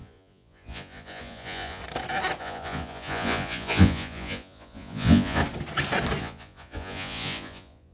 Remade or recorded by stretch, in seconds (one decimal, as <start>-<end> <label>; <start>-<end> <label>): 0.0-1.8 remade; 1.8-2.4 recorded; 2.4-5.4 remade; 5.4-6.2 recorded; 6.2-7.9 remade

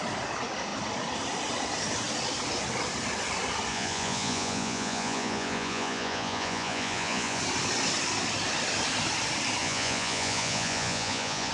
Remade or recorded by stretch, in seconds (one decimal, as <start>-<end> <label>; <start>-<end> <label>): 0.0-3.7 recorded; 3.7-7.4 remade; 7.4-9.6 recorded; 9.6-11.5 remade